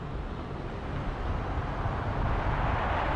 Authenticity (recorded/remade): recorded